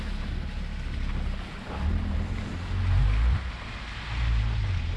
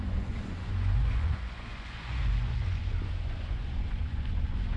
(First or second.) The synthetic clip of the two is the second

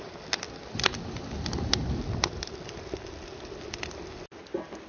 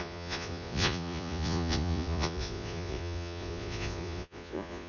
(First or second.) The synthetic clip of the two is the second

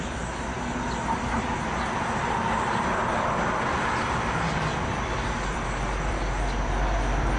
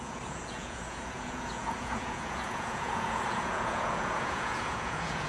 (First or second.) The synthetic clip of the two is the second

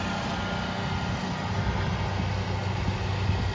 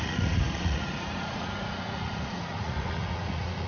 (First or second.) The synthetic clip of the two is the second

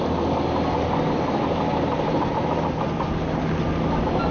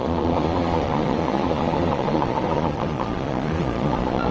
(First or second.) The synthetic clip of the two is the second